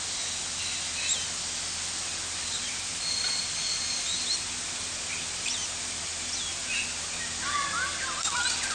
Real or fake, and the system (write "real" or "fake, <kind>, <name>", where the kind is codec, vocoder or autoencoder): real